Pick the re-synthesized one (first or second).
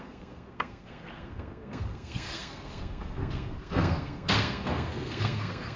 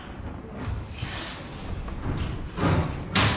first